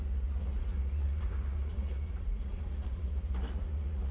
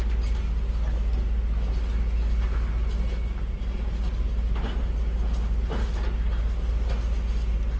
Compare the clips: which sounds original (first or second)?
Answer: second